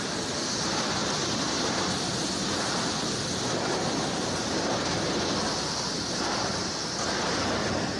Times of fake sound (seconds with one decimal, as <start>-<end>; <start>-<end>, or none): 1.0-1.8